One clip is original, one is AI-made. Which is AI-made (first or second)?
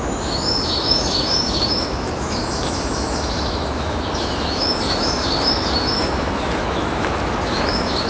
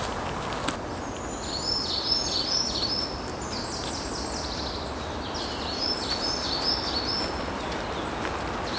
first